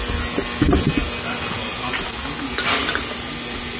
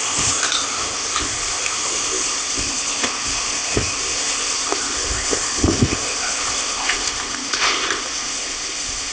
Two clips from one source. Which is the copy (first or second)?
second